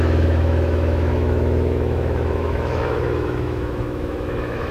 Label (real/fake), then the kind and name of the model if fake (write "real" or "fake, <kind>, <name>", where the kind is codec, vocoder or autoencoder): fake, autoencoder, DAC-VAE